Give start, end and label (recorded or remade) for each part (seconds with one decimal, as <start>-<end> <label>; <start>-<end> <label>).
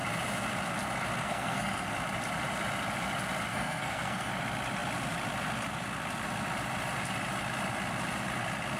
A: 0.0-1.2 recorded; 1.2-1.9 remade; 1.9-3.5 recorded; 3.5-4.3 remade; 4.3-8.8 recorded